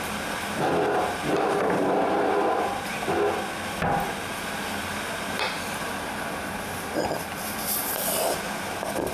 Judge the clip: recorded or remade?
recorded